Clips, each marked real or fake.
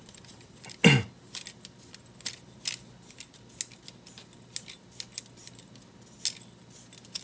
real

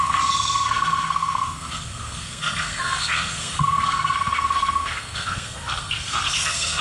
fake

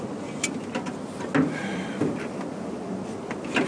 real